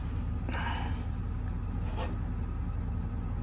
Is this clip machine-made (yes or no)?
no